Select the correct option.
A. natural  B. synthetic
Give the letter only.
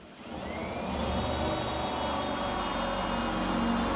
A